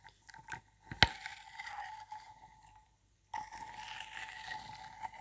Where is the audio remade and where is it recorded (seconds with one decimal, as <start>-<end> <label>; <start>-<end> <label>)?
0.0-5.2 recorded